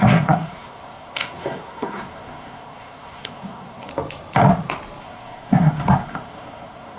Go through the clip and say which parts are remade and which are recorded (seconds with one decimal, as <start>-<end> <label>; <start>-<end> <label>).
0.0-3.9 remade; 3.9-5.0 recorded; 5.0-7.0 remade